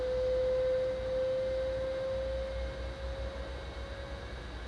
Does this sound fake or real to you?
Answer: real